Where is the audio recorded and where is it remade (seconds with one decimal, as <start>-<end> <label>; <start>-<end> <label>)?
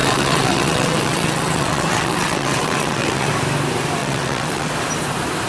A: 0.0-3.3 remade; 3.3-4.0 recorded; 4.0-4.7 remade; 4.7-5.5 recorded